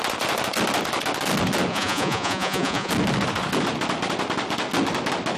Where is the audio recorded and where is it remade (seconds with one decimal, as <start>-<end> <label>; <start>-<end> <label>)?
0.0-1.7 recorded; 1.7-2.9 remade; 2.9-5.4 recorded

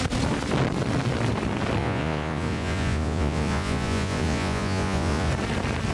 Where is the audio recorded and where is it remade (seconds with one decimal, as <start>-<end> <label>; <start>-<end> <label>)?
0.0-1.8 recorded; 1.8-5.3 remade; 5.3-5.9 recorded

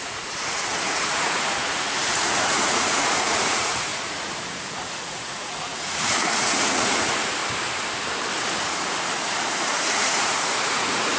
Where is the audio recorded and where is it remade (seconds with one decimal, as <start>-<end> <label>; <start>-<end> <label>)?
0.0-7.4 remade; 7.4-8.6 recorded; 8.6-11.2 remade

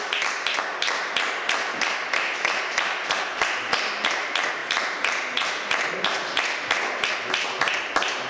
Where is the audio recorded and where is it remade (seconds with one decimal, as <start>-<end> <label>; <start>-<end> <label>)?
0.0-8.3 recorded

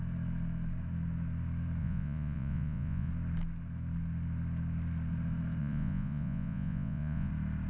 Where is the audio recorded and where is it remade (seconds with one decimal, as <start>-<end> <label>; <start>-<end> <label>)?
0.0-1.8 recorded; 1.8-3.1 remade; 3.1-5.6 recorded; 5.6-7.3 remade; 7.3-7.7 recorded

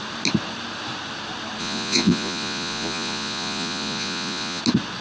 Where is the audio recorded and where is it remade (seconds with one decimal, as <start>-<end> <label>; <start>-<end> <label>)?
0.0-1.6 recorded; 1.6-4.6 remade; 4.6-5.0 recorded